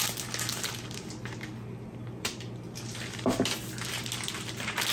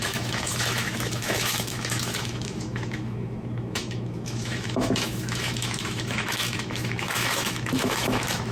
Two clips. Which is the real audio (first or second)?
first